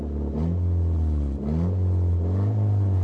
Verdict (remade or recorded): recorded